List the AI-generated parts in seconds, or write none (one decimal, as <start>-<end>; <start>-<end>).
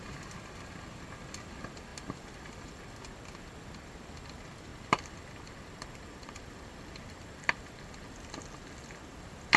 1.9-2.8; 4.7-7.6